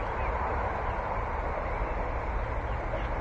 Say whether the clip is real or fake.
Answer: real